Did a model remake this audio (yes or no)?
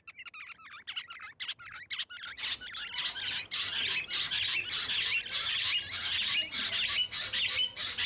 no